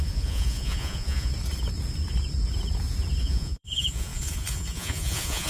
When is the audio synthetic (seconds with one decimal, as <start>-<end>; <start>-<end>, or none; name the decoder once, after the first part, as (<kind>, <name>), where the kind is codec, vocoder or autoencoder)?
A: 0.0-1.3 (vocoder, Vocos); 3.2-5.5